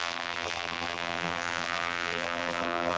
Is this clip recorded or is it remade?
remade